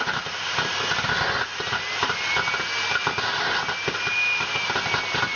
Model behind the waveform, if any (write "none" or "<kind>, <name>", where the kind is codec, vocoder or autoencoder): none